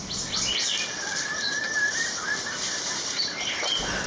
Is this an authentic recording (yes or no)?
yes